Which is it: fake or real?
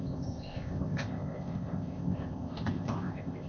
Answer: fake